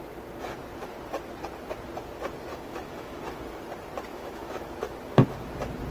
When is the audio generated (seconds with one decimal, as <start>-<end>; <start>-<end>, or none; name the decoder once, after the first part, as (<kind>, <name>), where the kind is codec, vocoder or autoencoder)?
2.5-3.2 (autoencoder, DAC-VAE); 4.1-4.8